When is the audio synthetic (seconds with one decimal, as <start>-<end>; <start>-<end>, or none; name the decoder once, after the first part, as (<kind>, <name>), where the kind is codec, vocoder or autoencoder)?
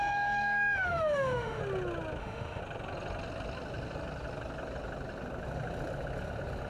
0.0-1.6 (autoencoder, DAC-VAE); 2.2-2.6